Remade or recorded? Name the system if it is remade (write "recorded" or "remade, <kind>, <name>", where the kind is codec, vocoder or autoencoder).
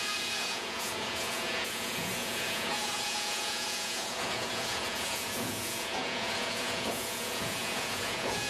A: remade, vocoder, Vocos